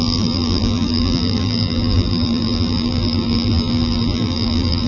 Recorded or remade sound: remade